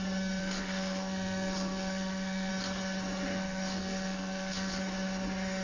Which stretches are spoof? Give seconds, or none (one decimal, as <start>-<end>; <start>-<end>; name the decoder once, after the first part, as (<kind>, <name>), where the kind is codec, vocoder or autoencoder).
0.4-2.5 (codec, SNAC); 3.3-4.8